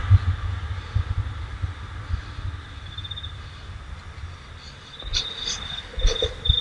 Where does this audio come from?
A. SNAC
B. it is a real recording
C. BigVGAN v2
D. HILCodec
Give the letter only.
B